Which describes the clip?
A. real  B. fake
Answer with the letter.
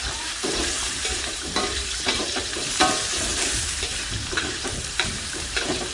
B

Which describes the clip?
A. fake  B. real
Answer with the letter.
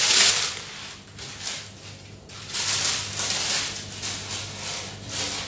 B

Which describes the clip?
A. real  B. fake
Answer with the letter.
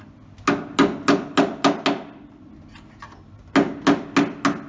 A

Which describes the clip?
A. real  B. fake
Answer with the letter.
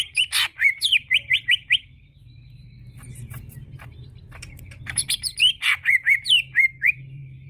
B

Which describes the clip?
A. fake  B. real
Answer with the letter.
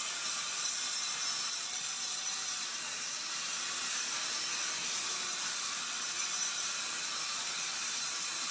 A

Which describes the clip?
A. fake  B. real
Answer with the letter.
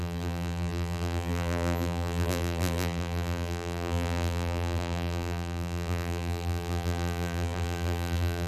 A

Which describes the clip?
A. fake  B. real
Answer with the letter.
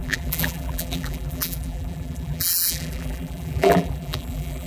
A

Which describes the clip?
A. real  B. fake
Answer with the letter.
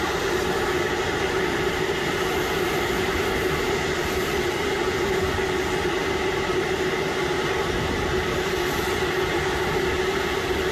B